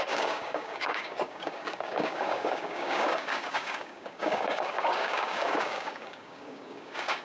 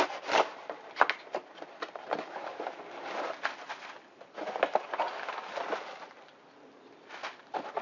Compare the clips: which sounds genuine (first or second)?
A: second